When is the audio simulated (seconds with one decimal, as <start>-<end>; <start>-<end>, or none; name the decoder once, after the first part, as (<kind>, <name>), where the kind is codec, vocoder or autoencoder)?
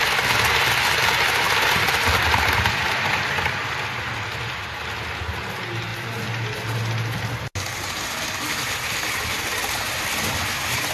none